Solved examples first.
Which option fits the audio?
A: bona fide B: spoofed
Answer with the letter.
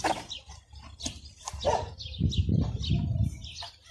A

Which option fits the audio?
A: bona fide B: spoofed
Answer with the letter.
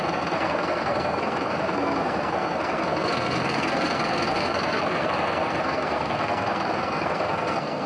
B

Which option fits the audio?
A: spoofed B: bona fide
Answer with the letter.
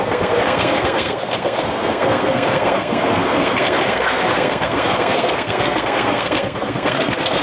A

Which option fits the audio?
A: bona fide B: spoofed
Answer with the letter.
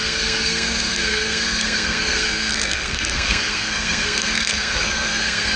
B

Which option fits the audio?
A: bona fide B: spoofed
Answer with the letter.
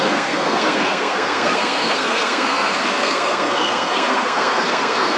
B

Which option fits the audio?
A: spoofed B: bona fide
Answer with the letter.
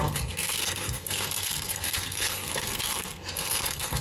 A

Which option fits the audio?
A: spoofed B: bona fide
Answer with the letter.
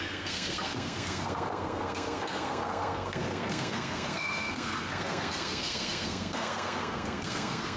A